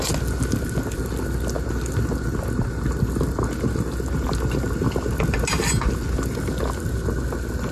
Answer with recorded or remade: recorded